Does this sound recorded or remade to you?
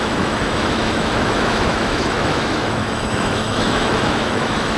remade